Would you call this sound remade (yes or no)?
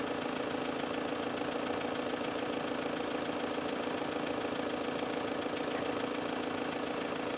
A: no